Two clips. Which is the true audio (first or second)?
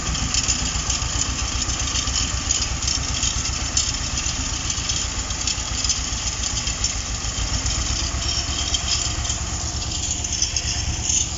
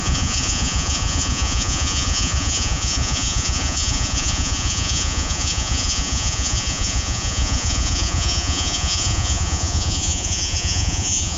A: first